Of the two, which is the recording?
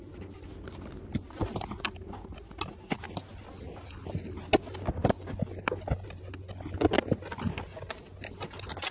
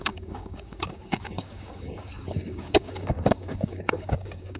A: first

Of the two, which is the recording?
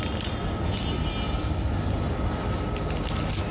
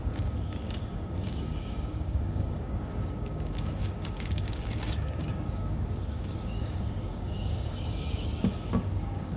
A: first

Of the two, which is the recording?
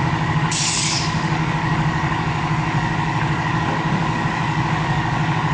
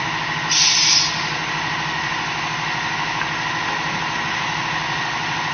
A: second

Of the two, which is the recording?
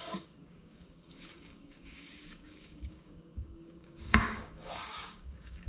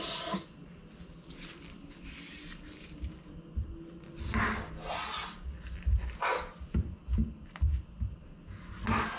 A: second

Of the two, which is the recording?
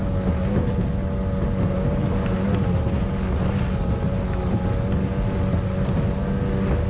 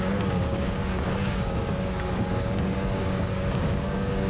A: first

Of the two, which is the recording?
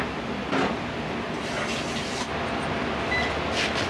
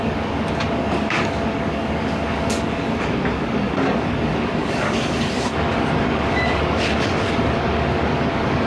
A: first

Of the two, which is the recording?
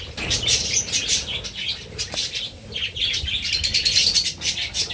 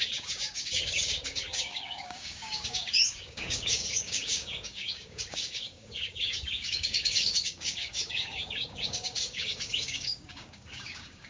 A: first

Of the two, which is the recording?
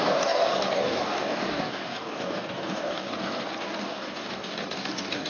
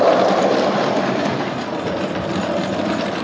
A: second